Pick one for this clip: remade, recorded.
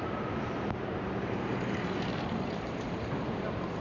remade